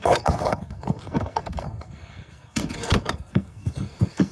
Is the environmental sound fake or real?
fake